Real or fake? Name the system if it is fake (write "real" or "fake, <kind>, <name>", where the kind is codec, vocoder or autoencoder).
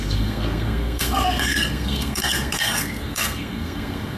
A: fake, codec, SNAC